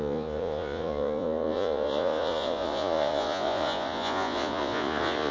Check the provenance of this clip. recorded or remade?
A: remade